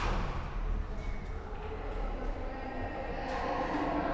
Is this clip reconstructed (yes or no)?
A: no